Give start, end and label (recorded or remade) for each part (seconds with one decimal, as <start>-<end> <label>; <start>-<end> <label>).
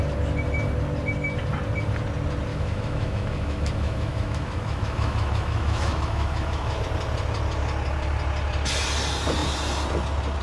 0.0-2.5 recorded; 2.5-6.8 remade; 6.8-10.4 recorded